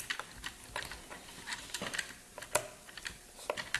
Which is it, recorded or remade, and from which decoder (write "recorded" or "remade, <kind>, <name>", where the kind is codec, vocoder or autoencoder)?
recorded